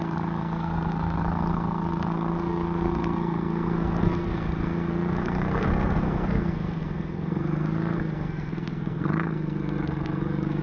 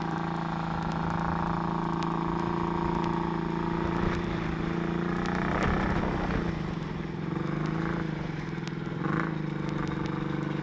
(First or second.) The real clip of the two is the second